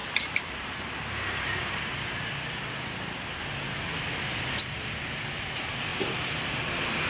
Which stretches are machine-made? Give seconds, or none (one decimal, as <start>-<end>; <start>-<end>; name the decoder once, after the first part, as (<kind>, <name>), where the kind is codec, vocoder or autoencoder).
0.0-3.9 (vocoder, BigVGAN v2)